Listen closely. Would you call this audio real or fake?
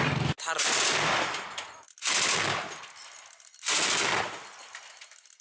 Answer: real